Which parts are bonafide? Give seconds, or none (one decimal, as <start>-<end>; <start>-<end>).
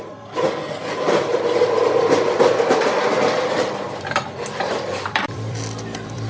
0.0-1.3; 2.4-3.0